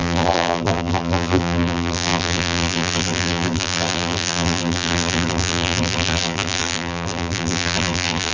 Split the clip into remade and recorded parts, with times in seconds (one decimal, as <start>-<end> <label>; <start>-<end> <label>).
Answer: 0.0-8.3 remade